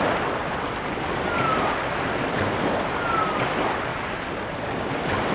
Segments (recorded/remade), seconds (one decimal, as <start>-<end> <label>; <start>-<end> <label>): 0.0-5.3 recorded